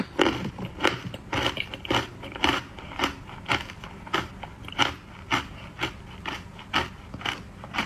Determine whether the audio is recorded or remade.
remade